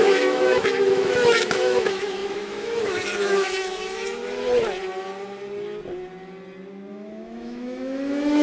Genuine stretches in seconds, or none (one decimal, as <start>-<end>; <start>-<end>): 4.2-6.9